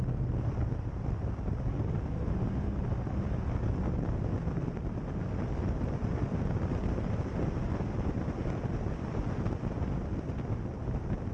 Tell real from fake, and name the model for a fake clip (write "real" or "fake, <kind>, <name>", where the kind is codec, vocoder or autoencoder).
real